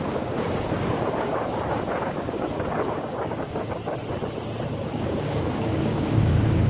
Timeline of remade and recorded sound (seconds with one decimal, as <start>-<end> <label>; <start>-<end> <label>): 0.0-3.8 remade; 3.8-4.9 recorded; 4.9-6.7 remade